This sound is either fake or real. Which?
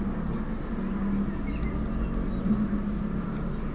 real